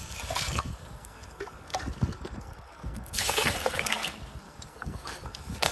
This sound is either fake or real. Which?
fake